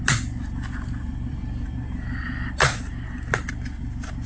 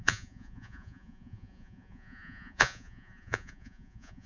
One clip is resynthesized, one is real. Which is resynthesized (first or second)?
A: second